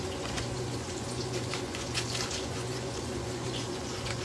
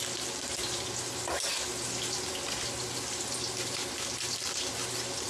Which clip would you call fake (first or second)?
first